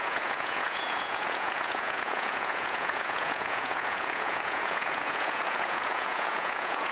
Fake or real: fake